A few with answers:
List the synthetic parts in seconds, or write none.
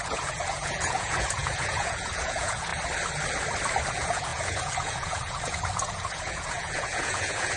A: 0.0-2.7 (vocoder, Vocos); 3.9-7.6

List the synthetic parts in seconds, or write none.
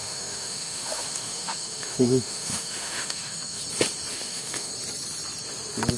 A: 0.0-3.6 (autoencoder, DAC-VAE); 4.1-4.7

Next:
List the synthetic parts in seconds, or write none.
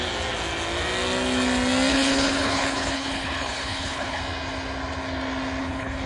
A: 1.9-4.2 (codec, HILCodec); 5.6-6.1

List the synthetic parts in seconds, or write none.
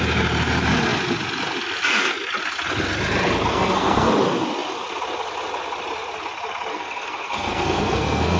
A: 3.5-4.1 (codec, SNAC); 6.7-8.4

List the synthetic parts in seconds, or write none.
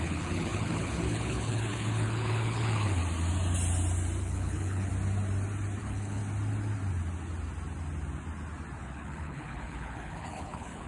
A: 0.0-3.0 (codec, HILCodec); 4.2-4.9; 5.8-6.2; 8.8-10.9